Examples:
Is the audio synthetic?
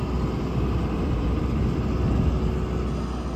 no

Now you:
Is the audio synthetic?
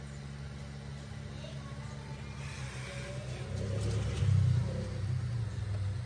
no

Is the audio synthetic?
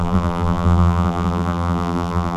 yes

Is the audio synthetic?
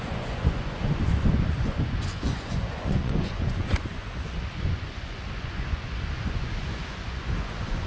yes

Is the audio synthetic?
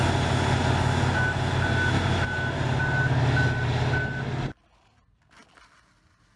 no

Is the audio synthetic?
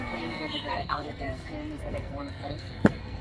yes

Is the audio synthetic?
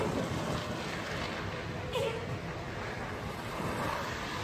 no